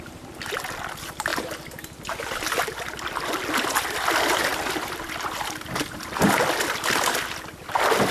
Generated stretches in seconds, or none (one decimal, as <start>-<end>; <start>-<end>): 4.5-8.1

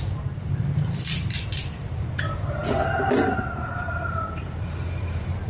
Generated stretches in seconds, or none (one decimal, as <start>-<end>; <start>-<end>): 0.0-2.6; 3.2-5.5

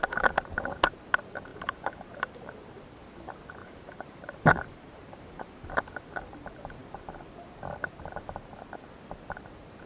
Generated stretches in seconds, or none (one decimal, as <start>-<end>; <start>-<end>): 1.5-2.5; 3.6-5.5

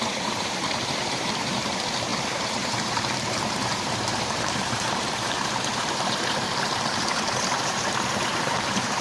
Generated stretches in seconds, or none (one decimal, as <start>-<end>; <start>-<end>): 0.0-9.0

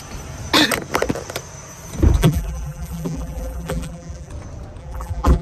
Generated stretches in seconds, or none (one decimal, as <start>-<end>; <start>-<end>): 2.2-4.3; 4.8-5.4

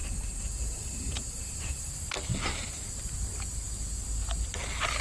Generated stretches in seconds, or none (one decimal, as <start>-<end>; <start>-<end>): 0.0-1.9

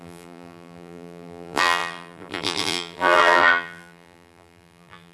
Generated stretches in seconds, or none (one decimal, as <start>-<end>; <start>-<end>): 0.0-5.1